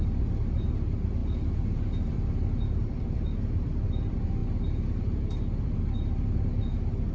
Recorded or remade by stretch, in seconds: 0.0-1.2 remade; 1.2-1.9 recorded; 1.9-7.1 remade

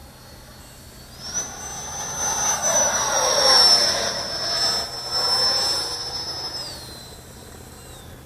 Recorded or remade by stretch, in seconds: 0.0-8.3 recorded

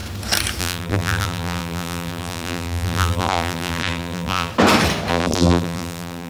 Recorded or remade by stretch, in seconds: 0.0-0.6 recorded; 0.6-4.5 remade; 4.5-5.1 recorded; 5.1-6.3 remade

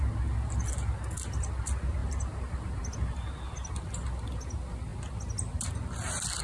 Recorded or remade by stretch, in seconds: 0.0-2.0 recorded; 2.0-2.8 remade; 2.8-6.4 recorded

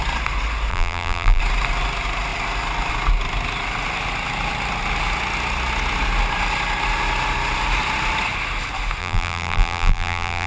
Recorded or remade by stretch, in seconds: 0.0-0.7 recorded; 0.7-1.4 remade; 1.4-9.0 recorded; 9.0-10.5 remade

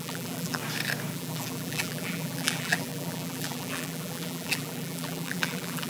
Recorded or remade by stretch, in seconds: 0.0-0.6 remade; 0.6-1.1 recorded; 1.1-5.9 remade